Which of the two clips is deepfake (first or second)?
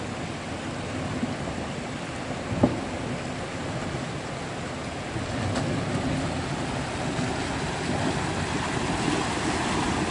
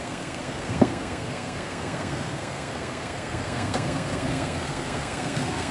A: second